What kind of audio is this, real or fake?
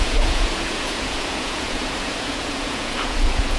fake